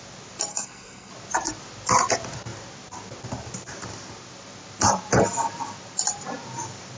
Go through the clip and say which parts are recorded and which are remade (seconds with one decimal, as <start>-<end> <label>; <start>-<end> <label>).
0.0-0.5 recorded; 0.5-1.1 remade; 1.1-7.0 recorded